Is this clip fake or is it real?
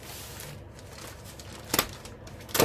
real